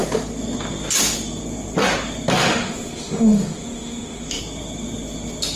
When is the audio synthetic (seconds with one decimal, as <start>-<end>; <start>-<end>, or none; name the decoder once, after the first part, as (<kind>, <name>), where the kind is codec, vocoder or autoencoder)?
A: 2.4-4.4 (autoencoder, DAC-VAE)